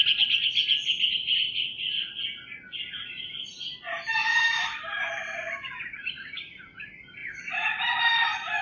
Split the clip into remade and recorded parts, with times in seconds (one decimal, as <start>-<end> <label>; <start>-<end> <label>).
0.0-8.6 recorded